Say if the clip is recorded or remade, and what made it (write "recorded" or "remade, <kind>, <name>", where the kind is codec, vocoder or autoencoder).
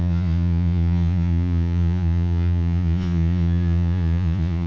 remade, vocoder, Vocos